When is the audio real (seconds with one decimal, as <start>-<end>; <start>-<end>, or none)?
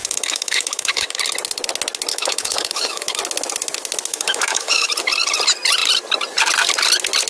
1.2-2.1; 3.2-4.1; 4.9-7.3